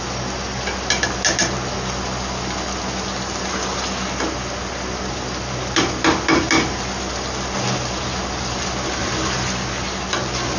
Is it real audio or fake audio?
real